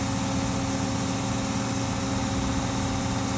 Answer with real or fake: real